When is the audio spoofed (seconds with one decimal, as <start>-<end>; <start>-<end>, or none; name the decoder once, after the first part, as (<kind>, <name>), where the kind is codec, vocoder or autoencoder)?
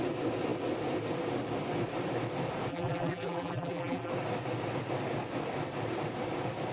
2.7-4.1 (vocoder, BigVGAN v2)